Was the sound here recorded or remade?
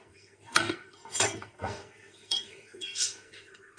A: remade